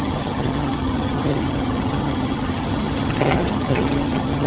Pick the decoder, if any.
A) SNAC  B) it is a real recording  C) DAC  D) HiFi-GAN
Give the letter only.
D